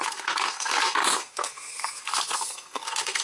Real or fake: fake